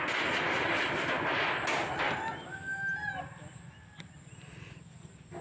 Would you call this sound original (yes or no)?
yes